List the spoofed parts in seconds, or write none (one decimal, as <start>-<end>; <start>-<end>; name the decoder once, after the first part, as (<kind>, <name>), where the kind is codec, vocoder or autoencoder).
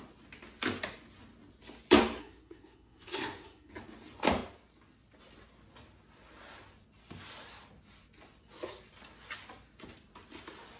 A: 2.2-3.7 (codec, SNAC)